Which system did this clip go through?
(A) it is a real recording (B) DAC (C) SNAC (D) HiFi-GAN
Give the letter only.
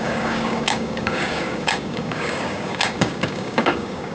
B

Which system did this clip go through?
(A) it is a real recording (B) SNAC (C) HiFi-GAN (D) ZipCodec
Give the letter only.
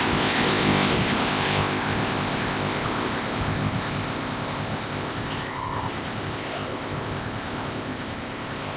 D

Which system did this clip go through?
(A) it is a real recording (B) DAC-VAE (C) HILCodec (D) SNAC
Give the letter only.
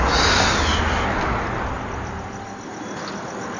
A